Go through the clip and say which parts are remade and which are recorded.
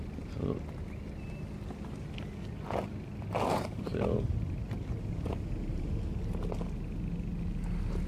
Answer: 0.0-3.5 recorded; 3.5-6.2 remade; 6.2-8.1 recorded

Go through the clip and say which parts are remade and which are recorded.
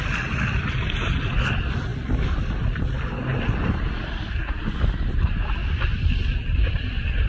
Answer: 0.0-1.9 recorded; 1.9-2.4 remade; 2.4-5.6 recorded; 5.6-7.3 remade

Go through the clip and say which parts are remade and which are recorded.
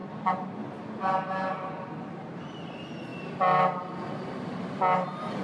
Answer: 0.0-5.4 recorded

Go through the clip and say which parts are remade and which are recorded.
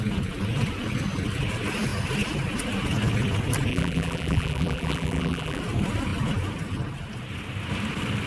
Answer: 0.0-3.7 recorded; 3.7-5.6 remade; 5.6-8.3 recorded